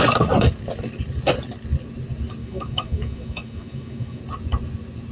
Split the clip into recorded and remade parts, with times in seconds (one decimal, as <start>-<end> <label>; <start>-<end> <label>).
0.0-2.4 recorded; 2.4-4.2 remade; 4.2-5.1 recorded